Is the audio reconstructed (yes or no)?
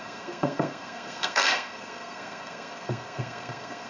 yes